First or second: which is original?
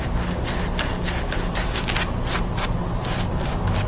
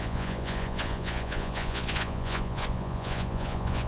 first